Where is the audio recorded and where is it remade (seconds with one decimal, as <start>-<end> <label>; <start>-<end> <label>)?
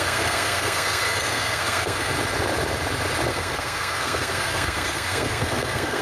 0.0-2.1 remade; 2.1-3.3 recorded; 3.3-6.0 remade